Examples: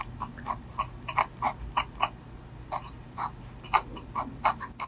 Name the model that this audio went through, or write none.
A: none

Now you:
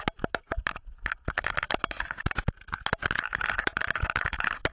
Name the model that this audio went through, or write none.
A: none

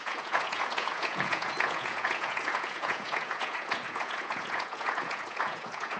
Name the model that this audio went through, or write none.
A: vocoder, Vocos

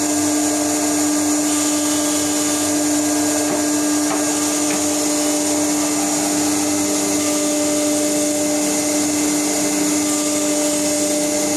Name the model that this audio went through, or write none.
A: none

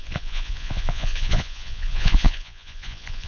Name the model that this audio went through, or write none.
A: vocoder, Vocos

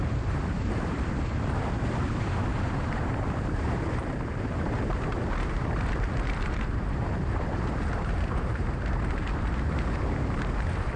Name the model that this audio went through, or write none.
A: vocoder, BigVGAN v2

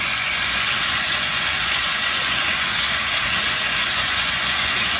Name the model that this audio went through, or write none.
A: vocoder, Vocos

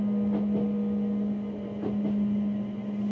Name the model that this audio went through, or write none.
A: none